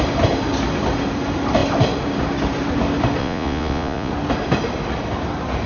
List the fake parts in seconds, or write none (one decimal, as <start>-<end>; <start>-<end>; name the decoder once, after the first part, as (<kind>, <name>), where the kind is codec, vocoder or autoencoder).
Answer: 3.2-4.1 (vocoder, Vocos)